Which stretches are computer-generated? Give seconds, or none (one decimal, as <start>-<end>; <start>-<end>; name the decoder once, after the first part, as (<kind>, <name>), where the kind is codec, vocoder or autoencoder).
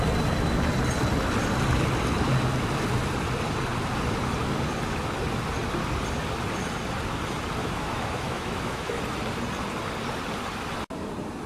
7.6-9.0 (autoencoder, DAC-VAE)